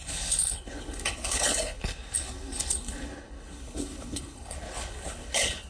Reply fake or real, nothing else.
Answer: fake